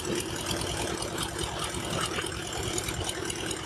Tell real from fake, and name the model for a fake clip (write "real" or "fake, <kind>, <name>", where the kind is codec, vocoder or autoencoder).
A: real